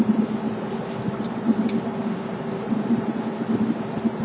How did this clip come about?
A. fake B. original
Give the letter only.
B